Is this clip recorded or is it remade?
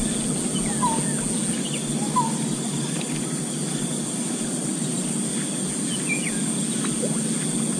recorded